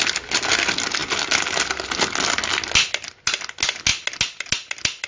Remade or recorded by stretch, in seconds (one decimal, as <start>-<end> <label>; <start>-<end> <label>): 0.0-5.1 recorded